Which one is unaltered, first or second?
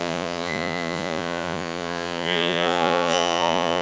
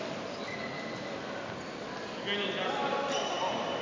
second